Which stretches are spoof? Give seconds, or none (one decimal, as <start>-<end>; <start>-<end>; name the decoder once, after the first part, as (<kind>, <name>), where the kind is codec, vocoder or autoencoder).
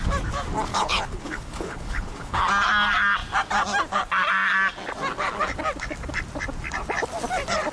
0.7-2.4 (codec, HILCodec)